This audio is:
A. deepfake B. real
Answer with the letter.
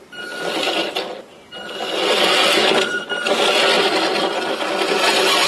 B